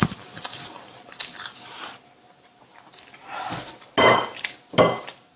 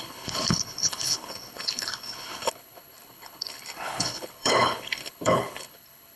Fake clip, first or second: second